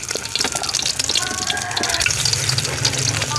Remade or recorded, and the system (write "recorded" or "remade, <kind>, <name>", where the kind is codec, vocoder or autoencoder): recorded